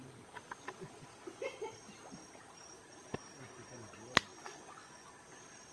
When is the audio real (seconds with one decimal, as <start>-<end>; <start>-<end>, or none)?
0.0-4.3; 5.1-5.7